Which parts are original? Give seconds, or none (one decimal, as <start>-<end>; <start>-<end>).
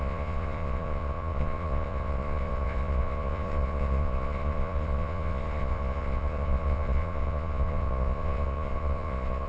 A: none